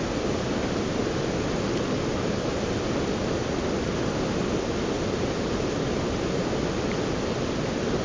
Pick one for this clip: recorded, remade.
recorded